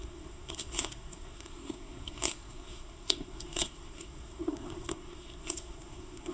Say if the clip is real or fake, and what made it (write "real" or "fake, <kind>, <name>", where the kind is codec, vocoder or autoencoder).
fake, codec, SNAC